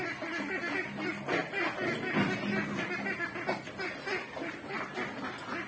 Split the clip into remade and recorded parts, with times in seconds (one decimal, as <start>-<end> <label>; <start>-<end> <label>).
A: 0.0-5.7 recorded